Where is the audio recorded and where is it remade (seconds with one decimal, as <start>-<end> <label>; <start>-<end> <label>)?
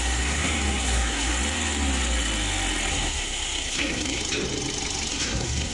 0.0-1.3 remade; 1.3-2.9 recorded; 2.9-4.2 remade; 4.2-5.1 recorded; 5.1-5.7 remade